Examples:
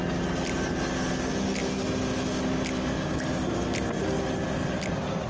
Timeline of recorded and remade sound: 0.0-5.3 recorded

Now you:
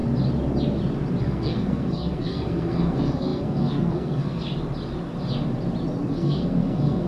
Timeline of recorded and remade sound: 0.0-1.2 recorded; 1.2-4.5 remade; 4.5-6.1 recorded; 6.1-7.1 remade

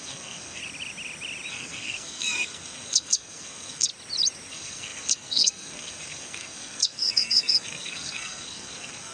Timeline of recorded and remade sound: 0.0-0.6 remade; 0.6-1.5 recorded; 1.5-3.9 remade; 3.9-4.5 recorded; 4.5-9.1 remade

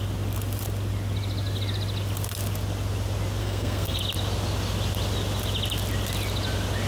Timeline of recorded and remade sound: 0.0-3.4 recorded; 3.4-4.0 remade; 4.0-6.9 recorded

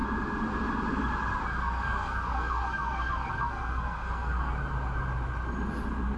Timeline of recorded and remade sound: 0.0-1.6 recorded; 1.6-4.5 remade; 4.5-6.2 recorded

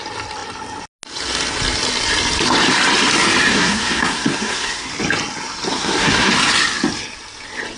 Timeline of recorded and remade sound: 0.0-3.5 recorded; 3.5-4.9 remade; 4.9-5.7 recorded; 5.7-6.3 remade; 6.3-7.8 recorded

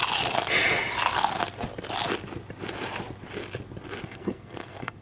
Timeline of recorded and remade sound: 0.0-4.0 recorded; 4.0-5.0 remade